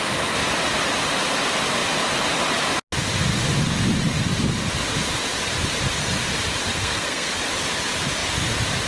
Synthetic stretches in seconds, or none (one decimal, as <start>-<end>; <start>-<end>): 6.7-7.3